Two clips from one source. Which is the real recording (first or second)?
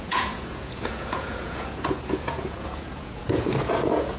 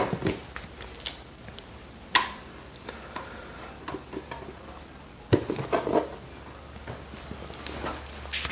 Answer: second